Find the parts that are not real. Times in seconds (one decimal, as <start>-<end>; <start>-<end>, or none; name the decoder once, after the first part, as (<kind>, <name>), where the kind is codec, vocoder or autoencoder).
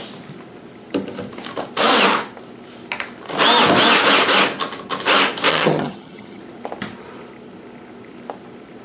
5.5-6.4 (vocoder, HiFi-GAN)